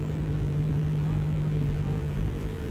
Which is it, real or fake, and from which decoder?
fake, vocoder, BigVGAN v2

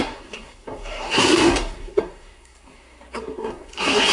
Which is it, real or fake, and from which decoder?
fake, codec, SNAC